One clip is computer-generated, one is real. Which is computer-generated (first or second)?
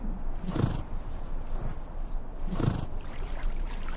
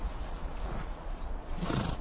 second